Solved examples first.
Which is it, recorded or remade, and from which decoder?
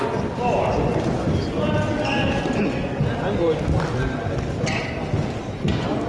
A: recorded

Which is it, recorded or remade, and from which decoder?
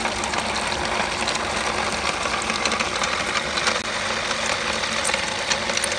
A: recorded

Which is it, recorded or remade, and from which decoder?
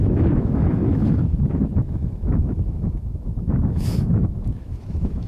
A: remade, autoencoder, DAC-VAE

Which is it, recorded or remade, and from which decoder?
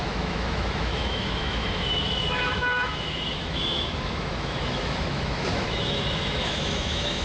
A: remade, autoencoder, DAC-VAE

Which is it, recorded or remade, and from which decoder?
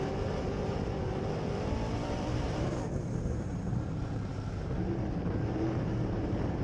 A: remade, vocoder, BigVGAN v2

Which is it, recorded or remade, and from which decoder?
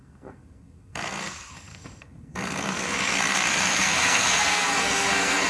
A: remade, codec, SNAC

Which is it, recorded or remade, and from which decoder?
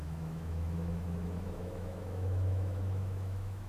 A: remade, autoencoder, DAC-VAE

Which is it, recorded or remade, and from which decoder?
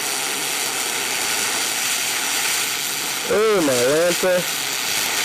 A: recorded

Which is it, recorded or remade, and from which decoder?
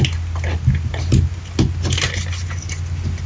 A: recorded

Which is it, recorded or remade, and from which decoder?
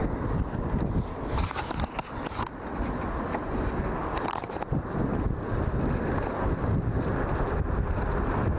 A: recorded